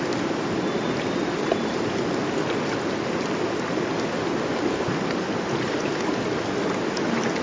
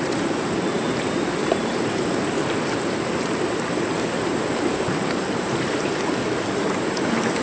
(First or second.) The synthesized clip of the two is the second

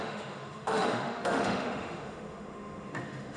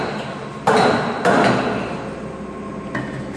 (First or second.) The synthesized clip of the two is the first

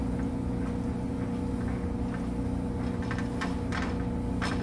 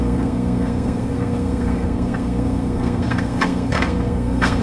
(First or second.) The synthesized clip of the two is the second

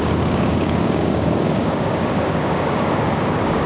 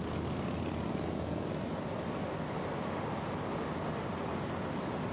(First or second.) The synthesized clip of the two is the first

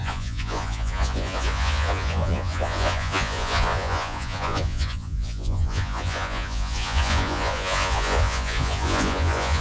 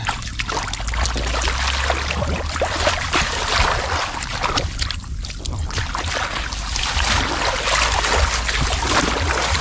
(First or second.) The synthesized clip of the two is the first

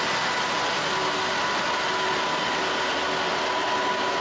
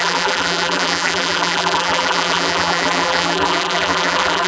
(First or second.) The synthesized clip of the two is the second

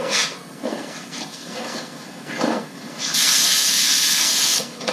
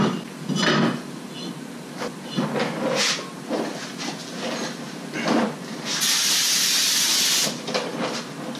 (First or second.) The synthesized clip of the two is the first